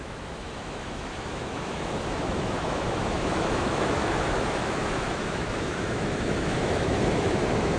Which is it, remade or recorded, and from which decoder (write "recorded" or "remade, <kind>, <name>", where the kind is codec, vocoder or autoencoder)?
remade, autoencoder, DAC-VAE